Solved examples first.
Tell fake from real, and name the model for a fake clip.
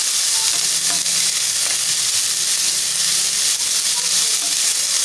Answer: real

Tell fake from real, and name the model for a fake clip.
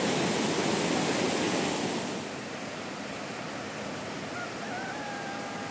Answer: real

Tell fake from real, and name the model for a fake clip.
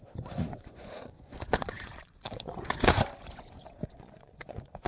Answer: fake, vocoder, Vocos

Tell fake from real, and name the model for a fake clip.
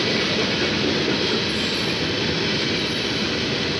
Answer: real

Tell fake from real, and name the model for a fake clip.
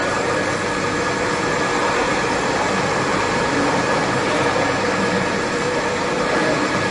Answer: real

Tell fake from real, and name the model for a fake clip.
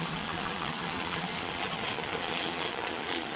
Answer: fake, vocoder, Vocos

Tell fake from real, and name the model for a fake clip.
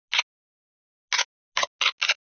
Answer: real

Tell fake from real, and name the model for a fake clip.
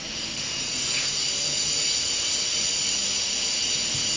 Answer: real